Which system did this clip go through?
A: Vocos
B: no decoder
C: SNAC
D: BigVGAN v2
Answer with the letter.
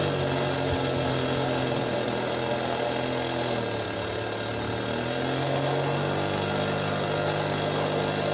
B